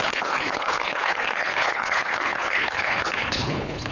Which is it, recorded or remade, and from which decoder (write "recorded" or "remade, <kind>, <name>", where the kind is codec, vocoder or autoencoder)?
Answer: remade, codec, HILCodec